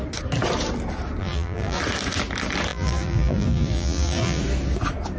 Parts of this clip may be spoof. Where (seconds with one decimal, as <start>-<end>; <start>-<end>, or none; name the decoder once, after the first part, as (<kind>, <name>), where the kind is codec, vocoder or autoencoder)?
1.2-1.8 (vocoder, BigVGAN v2); 2.7-4.4